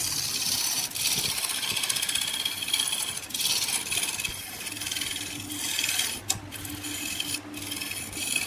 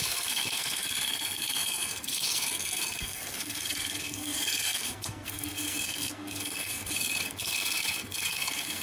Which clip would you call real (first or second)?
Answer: first